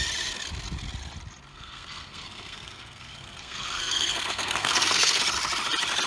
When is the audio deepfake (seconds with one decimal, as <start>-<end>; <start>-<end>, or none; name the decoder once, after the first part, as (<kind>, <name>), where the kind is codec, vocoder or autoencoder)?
1.5-5.2 (codec, SNAC)